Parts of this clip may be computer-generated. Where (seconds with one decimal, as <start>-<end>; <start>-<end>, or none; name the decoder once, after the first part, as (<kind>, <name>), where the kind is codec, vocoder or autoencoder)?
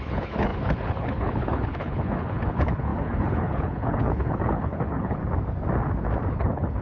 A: 0.0-5.2 (codec, HILCodec); 6.3-6.8